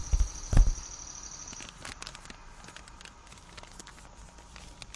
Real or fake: real